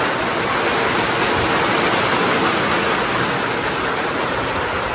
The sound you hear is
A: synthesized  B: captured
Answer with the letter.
B